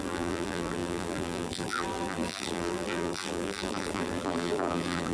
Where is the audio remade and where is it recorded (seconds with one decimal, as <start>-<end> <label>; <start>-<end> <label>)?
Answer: 0.0-5.1 remade

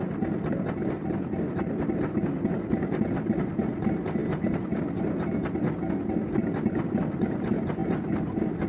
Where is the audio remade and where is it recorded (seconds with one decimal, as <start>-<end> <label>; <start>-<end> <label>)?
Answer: 0.0-8.7 recorded

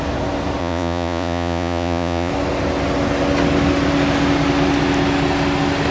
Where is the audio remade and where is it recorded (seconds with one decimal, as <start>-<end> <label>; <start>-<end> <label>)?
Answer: 0.0-0.6 recorded; 0.6-2.3 remade; 2.3-5.9 recorded

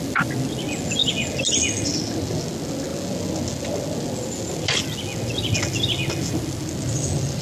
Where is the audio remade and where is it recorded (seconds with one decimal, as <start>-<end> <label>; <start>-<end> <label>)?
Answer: 0.0-7.4 recorded

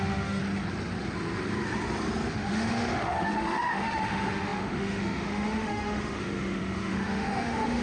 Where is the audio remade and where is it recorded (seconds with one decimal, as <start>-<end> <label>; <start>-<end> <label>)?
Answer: 0.0-0.4 remade; 0.4-2.3 recorded; 2.3-7.8 remade

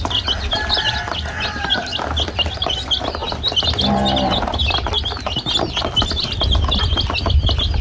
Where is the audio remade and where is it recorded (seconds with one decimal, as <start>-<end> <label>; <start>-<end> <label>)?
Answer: 0.0-7.8 recorded

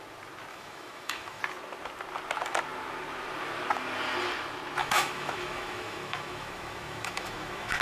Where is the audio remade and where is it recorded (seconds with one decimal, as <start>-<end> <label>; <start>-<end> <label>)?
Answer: 0.0-0.5 recorded; 0.5-1.4 remade; 1.4-4.8 recorded; 4.8-7.8 remade